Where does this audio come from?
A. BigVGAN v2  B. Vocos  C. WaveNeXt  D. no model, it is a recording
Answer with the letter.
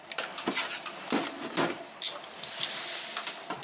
D